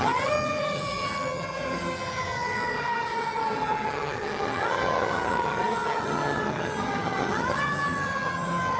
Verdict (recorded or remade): remade